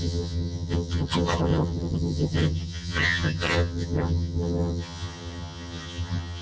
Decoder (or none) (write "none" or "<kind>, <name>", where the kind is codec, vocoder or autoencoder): vocoder, HiFi-GAN